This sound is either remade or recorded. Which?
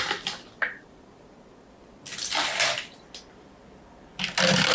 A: recorded